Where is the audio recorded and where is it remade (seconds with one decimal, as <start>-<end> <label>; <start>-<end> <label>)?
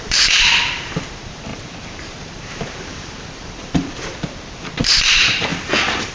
0.0-5.5 remade; 5.5-6.1 recorded